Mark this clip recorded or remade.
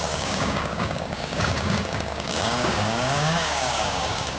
remade